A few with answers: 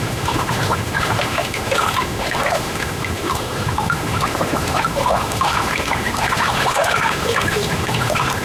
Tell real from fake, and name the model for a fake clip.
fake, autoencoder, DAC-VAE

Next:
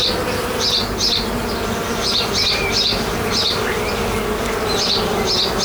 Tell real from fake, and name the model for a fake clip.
real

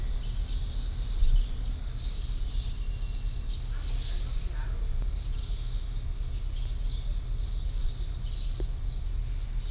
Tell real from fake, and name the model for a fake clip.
real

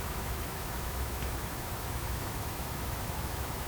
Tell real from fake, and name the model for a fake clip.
fake, autoencoder, DAC-VAE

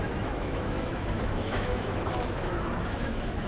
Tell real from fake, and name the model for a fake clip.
fake, autoencoder, DAC-VAE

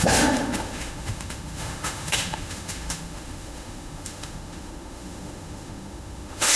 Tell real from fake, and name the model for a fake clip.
fake, autoencoder, DAC-VAE